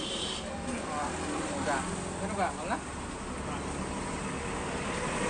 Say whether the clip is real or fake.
real